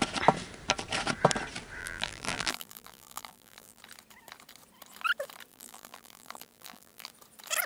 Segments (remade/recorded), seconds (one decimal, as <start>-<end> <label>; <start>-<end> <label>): 0.0-1.8 recorded; 1.8-3.8 remade; 3.8-5.5 recorded; 5.5-7.1 remade; 7.1-7.7 recorded